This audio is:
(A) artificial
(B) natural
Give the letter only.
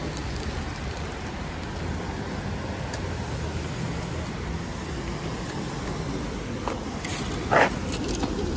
B